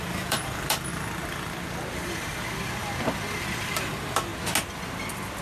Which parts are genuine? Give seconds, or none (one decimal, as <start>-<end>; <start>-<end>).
0.9-3.4; 4.3-5.4